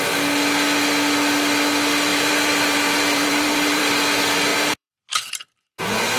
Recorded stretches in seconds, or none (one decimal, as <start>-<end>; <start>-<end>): 0.0-2.1; 3.8-4.5; 5.8-6.2